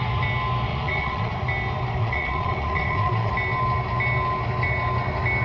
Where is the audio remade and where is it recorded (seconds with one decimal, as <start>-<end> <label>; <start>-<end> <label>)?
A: 0.0-0.7 recorded; 0.7-1.3 remade; 1.3-2.0 recorded; 2.0-3.3 remade; 3.3-5.4 recorded